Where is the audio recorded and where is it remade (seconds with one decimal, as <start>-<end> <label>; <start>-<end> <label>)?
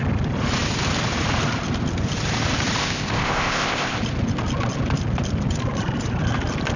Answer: 0.0-2.8 recorded; 2.8-4.0 remade; 4.0-6.8 recorded